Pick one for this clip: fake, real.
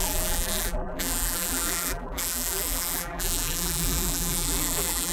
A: fake